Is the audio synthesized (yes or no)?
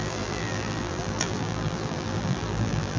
yes